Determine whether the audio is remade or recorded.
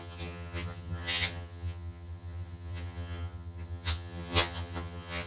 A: remade